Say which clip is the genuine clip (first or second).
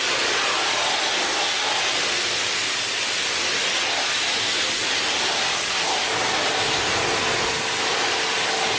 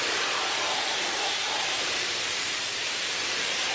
first